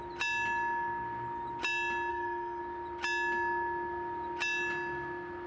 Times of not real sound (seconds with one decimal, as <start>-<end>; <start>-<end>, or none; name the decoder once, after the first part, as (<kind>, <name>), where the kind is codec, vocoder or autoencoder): 2.1-2.6 (codec, SNAC)